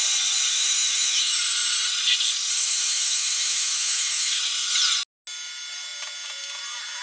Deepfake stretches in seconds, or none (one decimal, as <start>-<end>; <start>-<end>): 0.5-1.4; 2.6-4.4